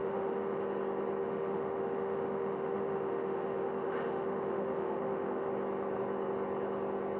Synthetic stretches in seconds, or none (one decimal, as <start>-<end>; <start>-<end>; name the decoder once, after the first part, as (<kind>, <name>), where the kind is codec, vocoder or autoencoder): 0.0-0.6 (autoencoder, DAC-VAE); 1.2-5.5